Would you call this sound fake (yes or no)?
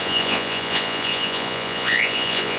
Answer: yes